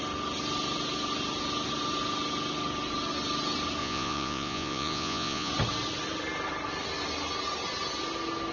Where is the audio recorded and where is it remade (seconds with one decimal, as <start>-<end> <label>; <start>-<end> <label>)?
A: 0.0-3.8 recorded; 3.8-5.5 remade; 5.5-8.5 recorded